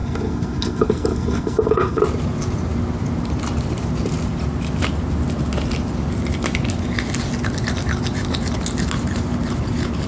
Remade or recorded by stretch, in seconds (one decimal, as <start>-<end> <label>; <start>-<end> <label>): 0.0-2.0 remade; 2.0-10.1 recorded